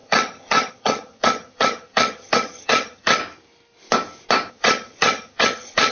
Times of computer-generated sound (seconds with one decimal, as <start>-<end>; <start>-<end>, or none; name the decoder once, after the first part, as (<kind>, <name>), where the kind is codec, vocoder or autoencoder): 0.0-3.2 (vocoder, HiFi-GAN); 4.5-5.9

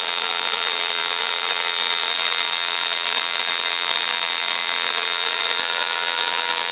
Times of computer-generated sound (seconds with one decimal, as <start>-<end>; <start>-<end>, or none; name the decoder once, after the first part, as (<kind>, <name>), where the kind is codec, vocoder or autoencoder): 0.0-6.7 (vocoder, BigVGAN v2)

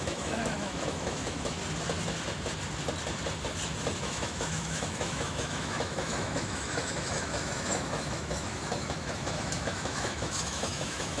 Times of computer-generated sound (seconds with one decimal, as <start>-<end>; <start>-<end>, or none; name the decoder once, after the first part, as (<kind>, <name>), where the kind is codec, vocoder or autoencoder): 0.0-1.6 (autoencoder, DAC-VAE); 4.0-11.2

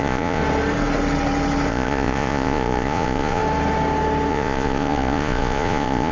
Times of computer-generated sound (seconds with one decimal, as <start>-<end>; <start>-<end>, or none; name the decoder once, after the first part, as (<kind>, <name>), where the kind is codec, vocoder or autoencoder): 0.0-0.4 (vocoder, Vocos); 1.7-3.4; 4.3-6.1